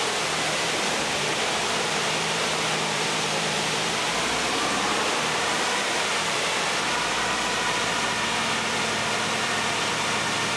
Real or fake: fake